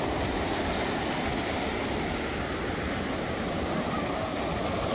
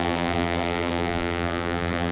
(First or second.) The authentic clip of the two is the first